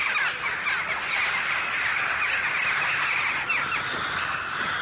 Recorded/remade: recorded